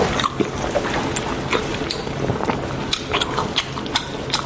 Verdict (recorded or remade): recorded